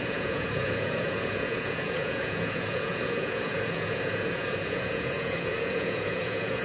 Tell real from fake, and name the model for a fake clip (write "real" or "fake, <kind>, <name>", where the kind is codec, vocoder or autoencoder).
fake, vocoder, Vocos